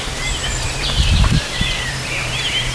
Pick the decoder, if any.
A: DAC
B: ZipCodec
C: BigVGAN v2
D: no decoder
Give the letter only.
C